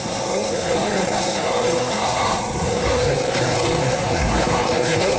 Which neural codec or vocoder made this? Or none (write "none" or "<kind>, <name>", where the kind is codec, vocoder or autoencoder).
codec, SNAC